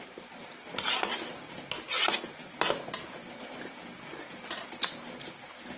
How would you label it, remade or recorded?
recorded